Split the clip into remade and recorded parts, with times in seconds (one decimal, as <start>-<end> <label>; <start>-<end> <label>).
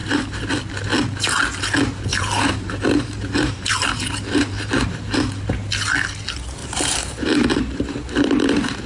0.0-0.5 remade; 0.5-2.1 recorded; 2.1-5.2 remade; 5.2-6.6 recorded; 6.6-8.4 remade; 8.4-8.9 recorded